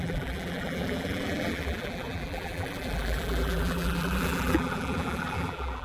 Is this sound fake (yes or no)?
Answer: yes